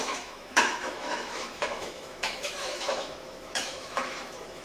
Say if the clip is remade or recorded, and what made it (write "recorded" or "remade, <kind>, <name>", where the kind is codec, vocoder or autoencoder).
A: remade, autoencoder, DAC-VAE